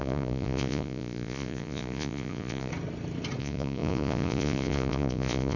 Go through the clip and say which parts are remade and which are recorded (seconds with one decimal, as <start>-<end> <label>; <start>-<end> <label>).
0.0-2.7 remade; 2.7-3.4 recorded; 3.4-5.6 remade